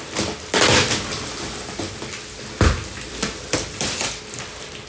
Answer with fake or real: real